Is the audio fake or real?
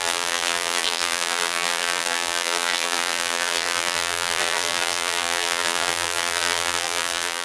fake